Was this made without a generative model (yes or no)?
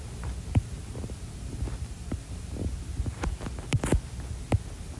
yes